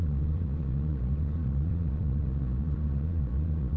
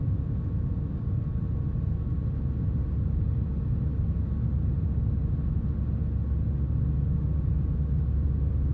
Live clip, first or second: second